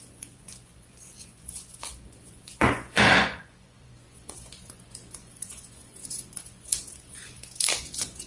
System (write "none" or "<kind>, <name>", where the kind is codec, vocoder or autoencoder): vocoder, Vocos